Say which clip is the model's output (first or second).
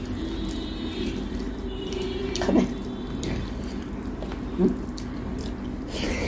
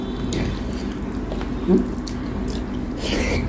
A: first